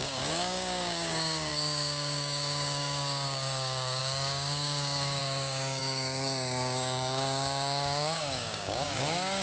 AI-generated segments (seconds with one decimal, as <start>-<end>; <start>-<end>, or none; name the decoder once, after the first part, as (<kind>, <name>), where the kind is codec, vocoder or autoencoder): 0.0-9.4 (codec, DAC)